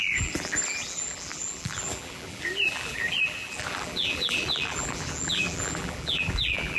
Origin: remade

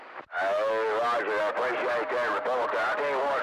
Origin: recorded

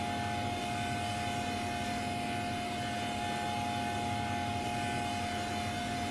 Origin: recorded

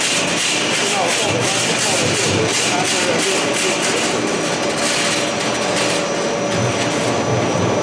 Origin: recorded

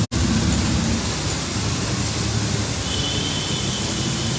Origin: recorded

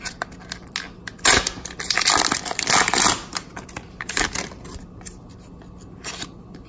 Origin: recorded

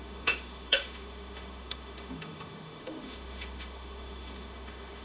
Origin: remade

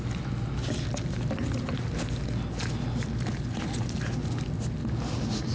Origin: recorded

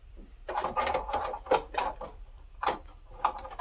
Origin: recorded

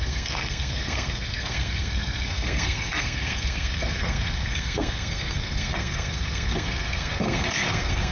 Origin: remade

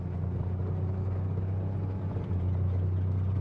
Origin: recorded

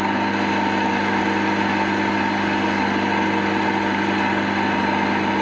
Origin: recorded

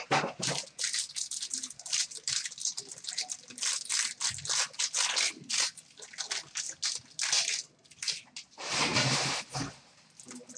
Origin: recorded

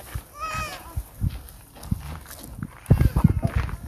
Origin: recorded